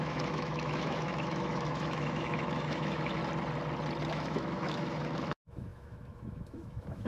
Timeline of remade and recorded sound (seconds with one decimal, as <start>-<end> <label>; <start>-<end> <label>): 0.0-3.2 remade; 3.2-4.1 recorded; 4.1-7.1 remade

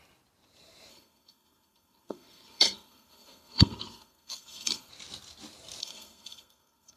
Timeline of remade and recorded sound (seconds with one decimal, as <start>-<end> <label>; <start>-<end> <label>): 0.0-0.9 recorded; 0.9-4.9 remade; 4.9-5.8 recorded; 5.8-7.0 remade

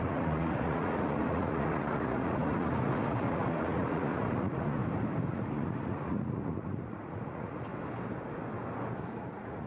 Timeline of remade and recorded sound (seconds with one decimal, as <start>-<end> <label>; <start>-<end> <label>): 0.0-4.8 remade; 4.8-5.3 recorded; 5.3-7.7 remade; 7.7-9.1 recorded; 9.1-9.7 remade

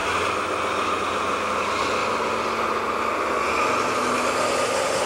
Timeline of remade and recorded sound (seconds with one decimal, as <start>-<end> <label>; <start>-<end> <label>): 0.0-5.1 recorded

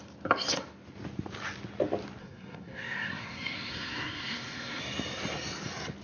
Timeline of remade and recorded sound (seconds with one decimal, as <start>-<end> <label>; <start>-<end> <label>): 0.0-2.2 recorded; 2.2-4.8 remade; 4.8-6.0 recorded

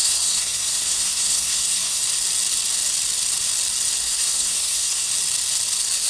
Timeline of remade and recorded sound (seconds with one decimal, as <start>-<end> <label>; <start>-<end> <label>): 0.0-2.0 remade; 2.0-4.0 recorded; 4.0-5.1 remade; 5.1-6.1 recorded

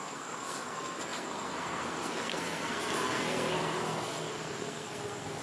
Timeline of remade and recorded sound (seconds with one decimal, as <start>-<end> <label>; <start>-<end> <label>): 0.0-5.4 remade

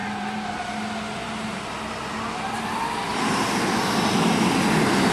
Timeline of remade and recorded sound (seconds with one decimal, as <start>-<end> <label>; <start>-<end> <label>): 0.0-0.6 remade; 0.6-1.2 recorded; 1.2-1.8 remade; 1.8-3.1 recorded; 3.1-3.7 remade; 3.7-5.1 recorded